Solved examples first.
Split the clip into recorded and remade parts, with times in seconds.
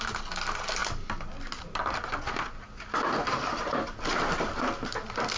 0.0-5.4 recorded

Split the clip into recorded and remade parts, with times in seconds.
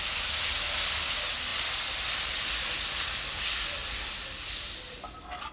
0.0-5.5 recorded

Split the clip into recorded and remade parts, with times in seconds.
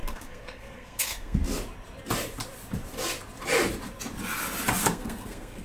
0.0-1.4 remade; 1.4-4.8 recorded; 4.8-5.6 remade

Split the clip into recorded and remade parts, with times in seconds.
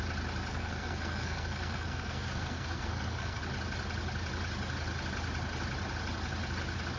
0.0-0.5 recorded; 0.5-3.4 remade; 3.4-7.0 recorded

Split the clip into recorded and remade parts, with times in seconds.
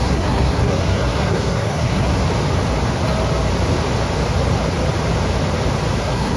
0.0-2.2 remade; 2.2-6.0 recorded; 6.0-6.4 remade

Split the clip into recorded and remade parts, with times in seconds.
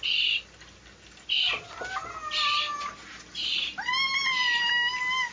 0.0-5.3 recorded